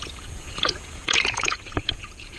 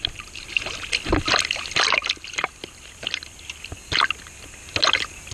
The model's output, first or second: first